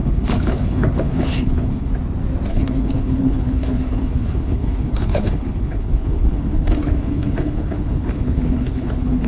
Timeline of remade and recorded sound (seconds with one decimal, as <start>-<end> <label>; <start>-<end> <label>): 0.0-1.9 remade; 1.9-2.5 recorded; 2.5-9.3 remade